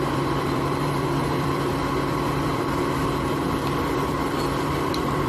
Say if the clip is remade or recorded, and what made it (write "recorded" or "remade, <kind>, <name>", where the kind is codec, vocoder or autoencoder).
remade, vocoder, BigVGAN v2